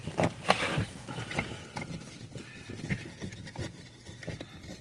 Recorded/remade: recorded